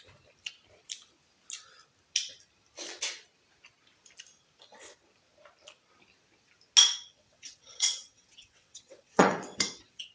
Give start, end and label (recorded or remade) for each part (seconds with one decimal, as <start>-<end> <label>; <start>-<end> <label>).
0.0-6.8 recorded; 6.8-10.1 remade

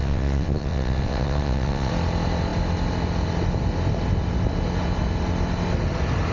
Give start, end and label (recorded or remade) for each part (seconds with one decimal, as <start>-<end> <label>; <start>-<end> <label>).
0.0-1.9 remade; 1.9-6.3 recorded

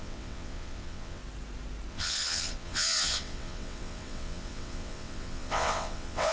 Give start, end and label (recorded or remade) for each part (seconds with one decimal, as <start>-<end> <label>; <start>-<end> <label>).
0.0-1.2 remade; 1.2-1.9 recorded; 1.9-6.3 remade

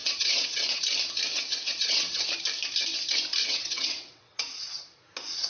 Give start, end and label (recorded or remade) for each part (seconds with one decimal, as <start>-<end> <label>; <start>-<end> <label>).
0.0-0.8 remade; 0.8-1.3 recorded; 1.3-2.2 remade; 2.2-3.4 recorded; 3.4-4.8 remade; 4.8-5.5 recorded

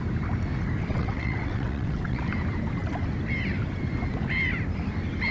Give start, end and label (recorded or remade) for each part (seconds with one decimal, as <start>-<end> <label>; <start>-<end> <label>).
0.0-0.9 recorded; 0.9-2.2 remade; 2.2-5.3 recorded

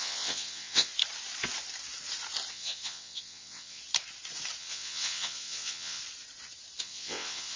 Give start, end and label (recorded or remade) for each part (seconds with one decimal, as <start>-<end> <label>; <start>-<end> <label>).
0.0-0.9 remade; 0.9-2.5 recorded; 2.5-3.8 remade; 3.8-4.6 recorded; 4.6-6.0 remade; 6.0-6.8 recorded; 6.8-7.6 remade

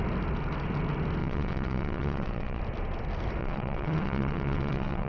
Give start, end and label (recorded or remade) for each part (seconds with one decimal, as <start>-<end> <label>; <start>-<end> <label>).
0.0-1.2 recorded; 1.2-2.6 remade; 2.6-3.4 recorded; 3.4-5.1 remade

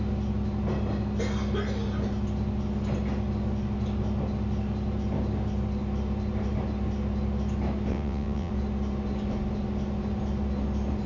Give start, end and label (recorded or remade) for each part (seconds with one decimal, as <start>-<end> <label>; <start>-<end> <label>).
0.0-7.9 recorded; 7.9-8.5 remade; 8.5-11.1 recorded